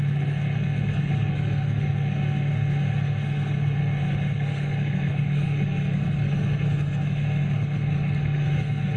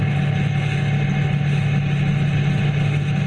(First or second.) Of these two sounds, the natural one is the second